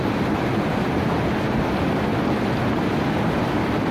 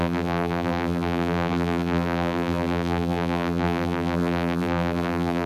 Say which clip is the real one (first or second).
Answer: first